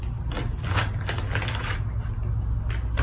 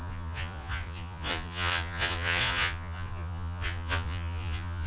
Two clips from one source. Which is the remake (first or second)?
second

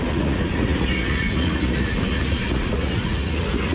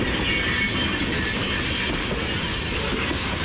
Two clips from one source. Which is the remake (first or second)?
first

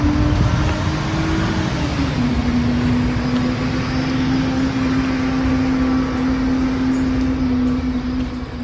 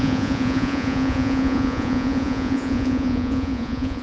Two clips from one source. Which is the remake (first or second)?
second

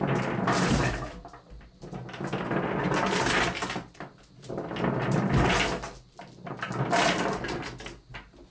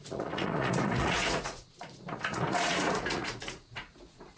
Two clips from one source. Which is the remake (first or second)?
second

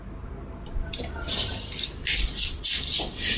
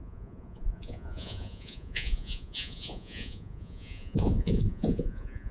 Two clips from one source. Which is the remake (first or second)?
second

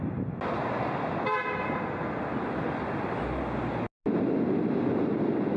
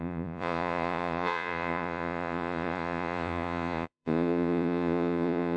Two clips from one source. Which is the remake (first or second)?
second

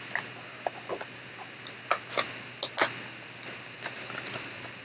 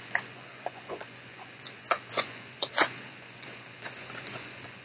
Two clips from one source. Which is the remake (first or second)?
second